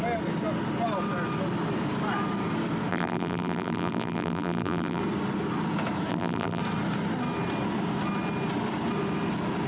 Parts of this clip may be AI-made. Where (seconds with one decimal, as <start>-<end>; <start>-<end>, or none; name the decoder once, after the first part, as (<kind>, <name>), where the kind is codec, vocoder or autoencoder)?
2.9-5.0 (vocoder, BigVGAN v2); 6.1-6.6